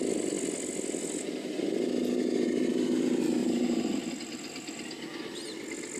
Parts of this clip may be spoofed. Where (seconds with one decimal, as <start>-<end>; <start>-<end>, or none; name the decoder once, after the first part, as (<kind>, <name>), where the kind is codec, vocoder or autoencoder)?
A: 3.4-3.9 (vocoder, BigVGAN v2)

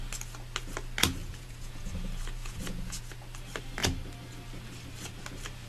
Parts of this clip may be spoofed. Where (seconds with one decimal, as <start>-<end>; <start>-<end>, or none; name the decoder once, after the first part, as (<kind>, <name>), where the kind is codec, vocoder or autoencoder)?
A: 1.2-1.9 (vocoder, Vocos); 2.4-3.0